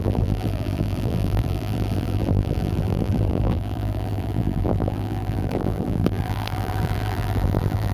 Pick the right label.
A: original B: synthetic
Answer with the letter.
B